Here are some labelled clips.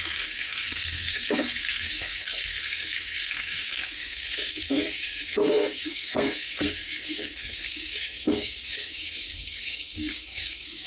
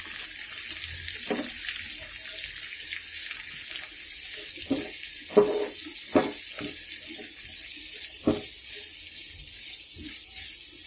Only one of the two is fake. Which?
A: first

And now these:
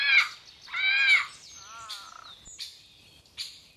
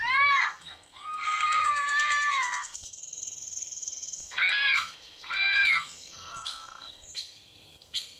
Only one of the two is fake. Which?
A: second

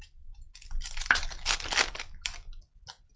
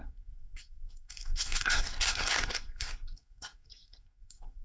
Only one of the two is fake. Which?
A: second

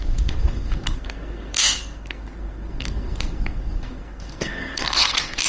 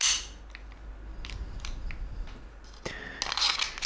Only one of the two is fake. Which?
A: first